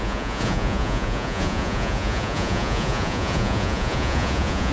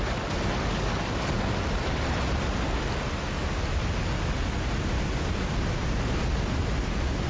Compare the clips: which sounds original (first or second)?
second